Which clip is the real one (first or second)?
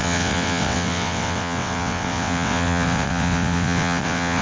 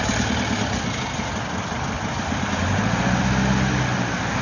second